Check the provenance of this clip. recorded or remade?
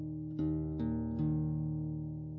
recorded